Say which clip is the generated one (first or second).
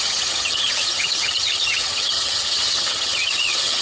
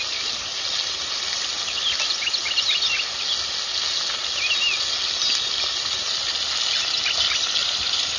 first